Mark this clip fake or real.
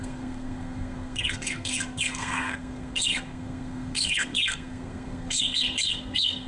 fake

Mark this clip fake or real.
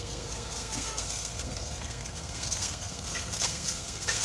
fake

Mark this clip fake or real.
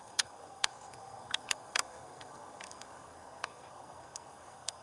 fake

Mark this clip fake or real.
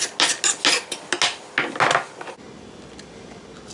real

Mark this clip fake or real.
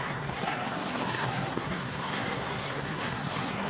fake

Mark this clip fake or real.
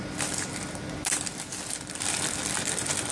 real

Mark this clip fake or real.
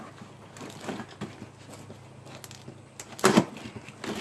real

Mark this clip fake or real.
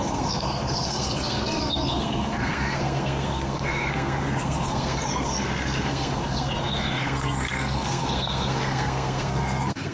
fake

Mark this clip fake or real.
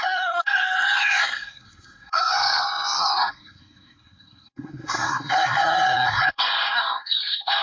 fake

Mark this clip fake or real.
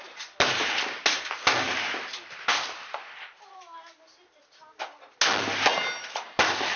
real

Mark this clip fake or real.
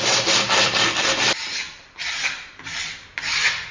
real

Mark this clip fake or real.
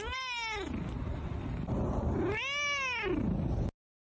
real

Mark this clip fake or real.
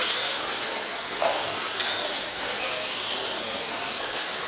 fake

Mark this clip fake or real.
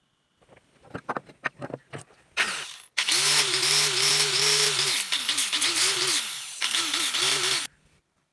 real